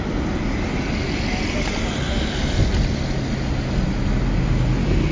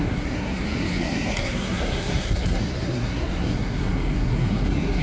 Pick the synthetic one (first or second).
second